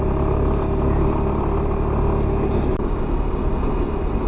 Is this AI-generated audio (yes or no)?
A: no